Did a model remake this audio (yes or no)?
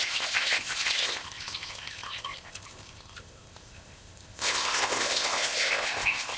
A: yes